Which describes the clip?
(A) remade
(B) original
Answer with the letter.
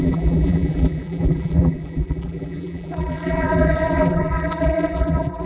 A